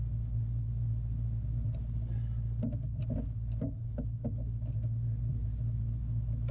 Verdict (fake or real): real